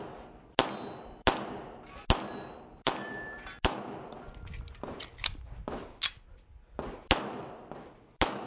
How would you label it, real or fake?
real